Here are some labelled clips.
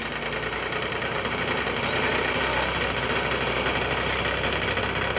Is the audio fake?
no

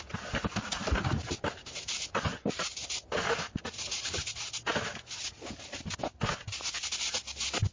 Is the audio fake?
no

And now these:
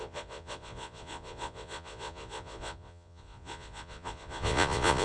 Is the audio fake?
yes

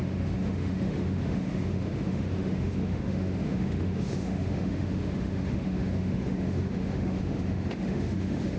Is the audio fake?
yes